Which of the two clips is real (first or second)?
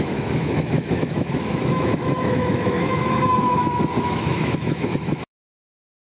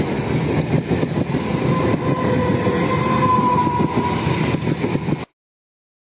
second